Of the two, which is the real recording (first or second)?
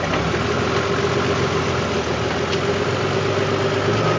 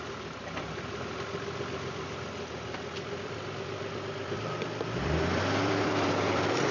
first